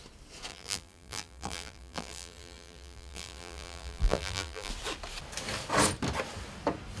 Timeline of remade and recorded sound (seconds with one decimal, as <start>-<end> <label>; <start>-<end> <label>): 0.0-0.5 recorded; 0.5-4.7 remade; 4.7-7.0 recorded